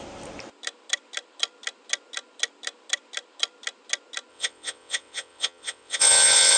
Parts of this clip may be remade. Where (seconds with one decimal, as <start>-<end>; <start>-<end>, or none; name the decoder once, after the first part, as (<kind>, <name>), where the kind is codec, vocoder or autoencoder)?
4.3-6.6 (vocoder, WaveNeXt)